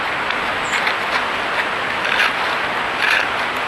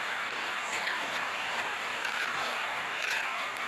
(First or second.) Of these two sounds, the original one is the first